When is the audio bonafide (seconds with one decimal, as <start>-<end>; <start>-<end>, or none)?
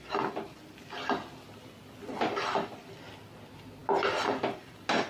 0.0-5.1